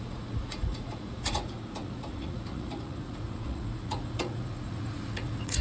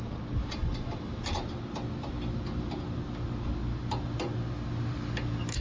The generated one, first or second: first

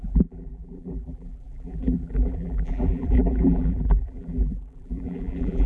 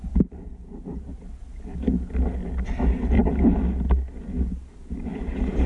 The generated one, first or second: first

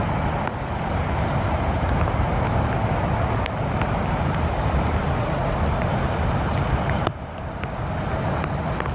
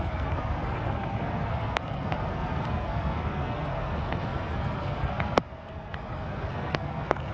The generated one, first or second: second